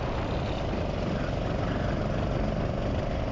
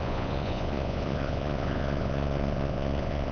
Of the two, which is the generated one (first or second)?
second